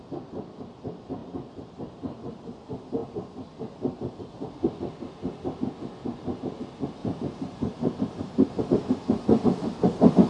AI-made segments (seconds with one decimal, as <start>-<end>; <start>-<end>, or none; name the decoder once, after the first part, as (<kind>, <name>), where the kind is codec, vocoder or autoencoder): 6.0-6.6 (vocoder, BigVGAN v2); 7.0-8.6